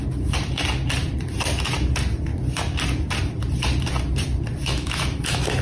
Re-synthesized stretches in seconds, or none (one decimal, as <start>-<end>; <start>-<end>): 4.6-5.6